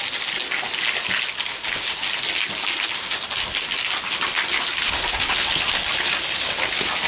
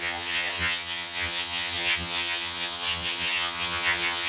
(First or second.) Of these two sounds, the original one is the first